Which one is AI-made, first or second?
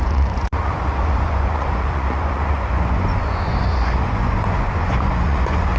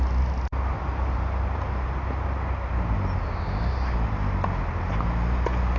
first